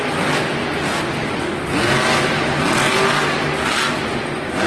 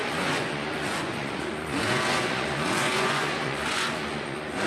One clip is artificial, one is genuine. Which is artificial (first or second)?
second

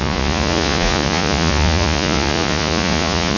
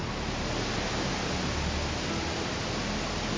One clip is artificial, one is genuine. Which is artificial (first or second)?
first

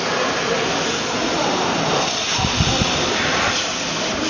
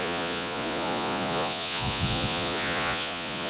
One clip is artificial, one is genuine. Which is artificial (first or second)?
second